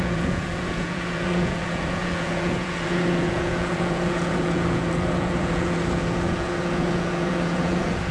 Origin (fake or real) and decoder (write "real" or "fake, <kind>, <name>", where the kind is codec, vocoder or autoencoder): fake, vocoder, Vocos